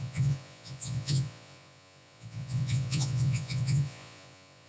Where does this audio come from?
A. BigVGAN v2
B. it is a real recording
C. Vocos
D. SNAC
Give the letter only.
C